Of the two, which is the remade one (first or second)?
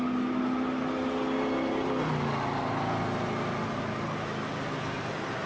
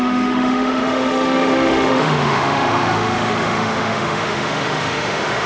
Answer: second